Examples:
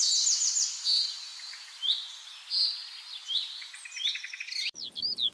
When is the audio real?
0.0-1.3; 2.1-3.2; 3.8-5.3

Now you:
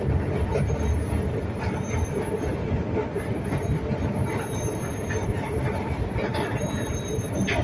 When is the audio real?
0.0-7.6

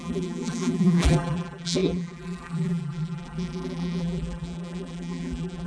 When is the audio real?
none

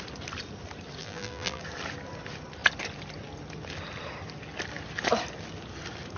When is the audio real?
0.0-1.0; 1.6-6.2

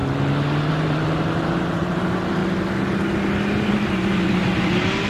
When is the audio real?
0.0-0.7; 2.4-3.7

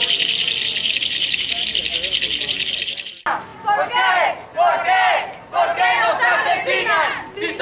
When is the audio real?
0.0-7.6

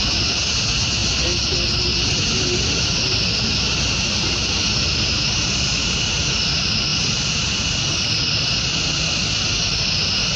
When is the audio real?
0.0-6.9; 7.9-10.4